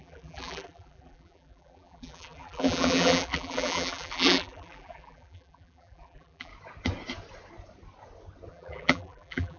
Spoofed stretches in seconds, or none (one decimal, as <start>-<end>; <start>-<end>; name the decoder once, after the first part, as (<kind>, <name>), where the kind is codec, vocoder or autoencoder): 0.0-6.5 (vocoder, BigVGAN v2); 8.5-9.6